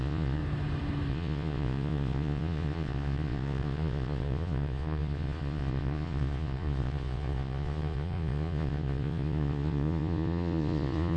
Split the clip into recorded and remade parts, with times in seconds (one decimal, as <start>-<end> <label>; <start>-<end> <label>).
0.0-0.4 remade; 0.4-1.1 recorded; 1.1-11.2 remade